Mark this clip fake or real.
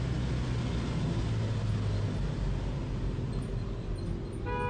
real